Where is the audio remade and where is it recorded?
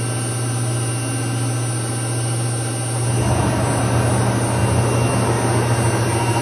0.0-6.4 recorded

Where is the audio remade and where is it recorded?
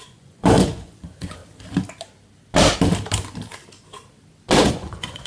0.0-1.4 remade; 1.4-4.6 recorded; 4.6-5.3 remade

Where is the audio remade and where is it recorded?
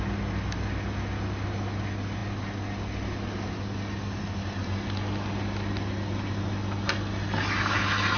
0.0-8.2 recorded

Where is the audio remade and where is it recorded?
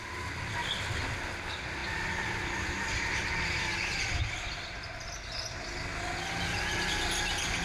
0.0-7.6 recorded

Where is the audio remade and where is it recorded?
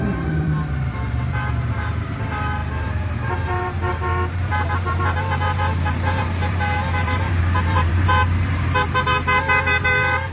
0.0-10.3 remade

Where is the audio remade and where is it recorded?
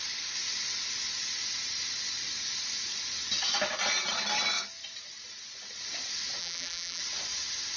0.0-6.4 recorded; 6.4-7.0 remade; 7.0-7.8 recorded